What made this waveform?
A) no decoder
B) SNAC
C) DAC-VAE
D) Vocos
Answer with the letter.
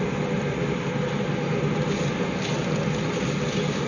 A